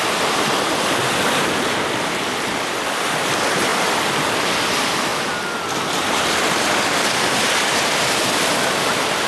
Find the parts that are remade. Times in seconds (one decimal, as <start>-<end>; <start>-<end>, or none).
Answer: 3.0-5.1; 7.3-9.3